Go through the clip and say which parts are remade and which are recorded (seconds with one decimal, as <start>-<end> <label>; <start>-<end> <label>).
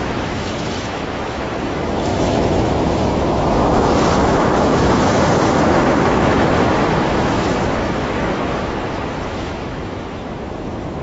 0.0-11.0 remade